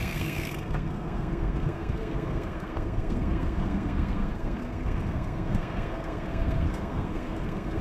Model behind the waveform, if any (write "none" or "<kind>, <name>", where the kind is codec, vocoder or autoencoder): codec, SNAC